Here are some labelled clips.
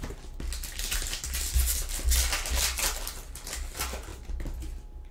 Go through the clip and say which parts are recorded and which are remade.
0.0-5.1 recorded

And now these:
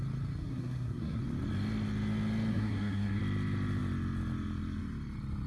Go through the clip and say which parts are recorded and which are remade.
0.0-0.4 recorded; 0.4-1.2 remade; 1.2-2.5 recorded; 2.5-3.2 remade; 3.2-5.5 recorded

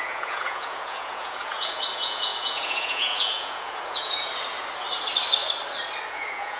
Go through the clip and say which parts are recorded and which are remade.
0.0-4.3 remade; 4.3-6.1 recorded; 6.1-6.6 remade

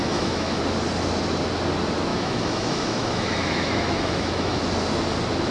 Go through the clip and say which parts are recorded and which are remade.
0.0-0.6 remade; 0.6-2.1 recorded; 2.1-4.6 remade; 4.6-5.5 recorded

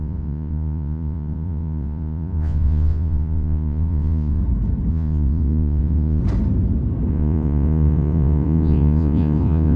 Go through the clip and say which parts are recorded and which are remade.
0.0-4.4 remade; 4.4-4.9 recorded; 4.9-6.2 remade; 6.2-7.1 recorded; 7.1-9.8 remade

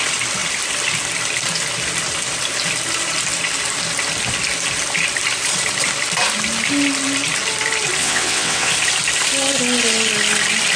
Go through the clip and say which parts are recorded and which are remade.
0.0-8.0 recorded; 8.0-8.7 remade; 8.7-10.8 recorded

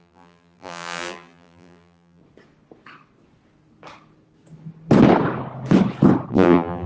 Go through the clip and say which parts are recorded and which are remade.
0.0-2.2 remade; 2.2-6.3 recorded; 6.3-6.9 remade

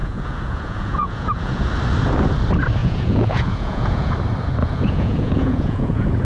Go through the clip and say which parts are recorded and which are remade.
0.0-1.7 remade; 1.7-2.8 recorded; 2.8-4.1 remade; 4.1-4.6 recorded; 4.6-6.2 remade